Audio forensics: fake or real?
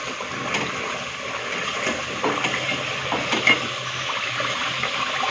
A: real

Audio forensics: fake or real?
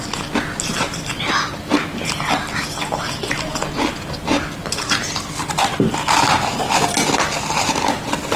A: real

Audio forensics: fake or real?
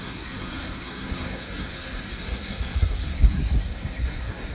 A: fake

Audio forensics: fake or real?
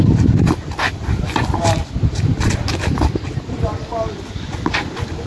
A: real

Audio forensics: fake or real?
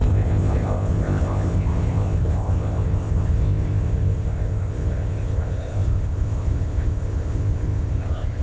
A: fake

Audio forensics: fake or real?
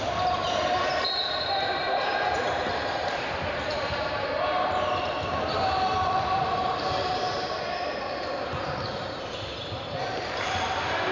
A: fake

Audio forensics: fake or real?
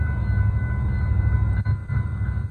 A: real